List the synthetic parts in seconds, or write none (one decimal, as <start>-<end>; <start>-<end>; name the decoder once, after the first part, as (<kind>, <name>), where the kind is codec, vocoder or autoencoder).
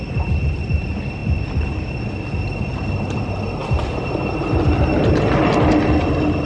none